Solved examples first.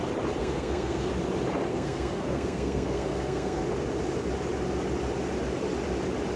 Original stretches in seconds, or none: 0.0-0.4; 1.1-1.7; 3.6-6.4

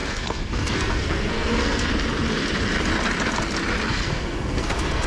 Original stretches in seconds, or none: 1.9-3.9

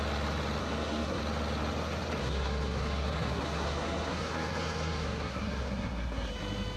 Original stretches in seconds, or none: 0.0-0.6; 1.2-2.2; 6.3-6.8